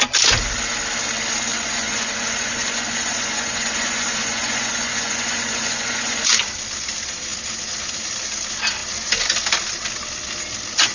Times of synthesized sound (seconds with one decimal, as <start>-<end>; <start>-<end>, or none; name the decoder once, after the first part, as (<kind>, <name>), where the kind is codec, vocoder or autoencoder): 1.5-6.2 (vocoder, Vocos)